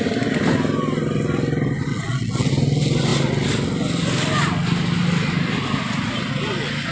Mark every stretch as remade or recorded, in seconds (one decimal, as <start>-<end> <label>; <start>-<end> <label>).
0.0-1.9 recorded; 1.9-2.5 remade; 2.5-6.9 recorded